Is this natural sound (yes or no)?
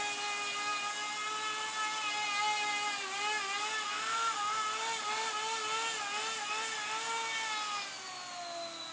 yes